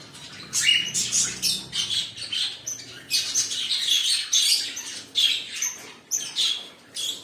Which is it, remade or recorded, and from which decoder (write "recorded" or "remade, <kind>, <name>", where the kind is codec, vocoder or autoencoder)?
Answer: recorded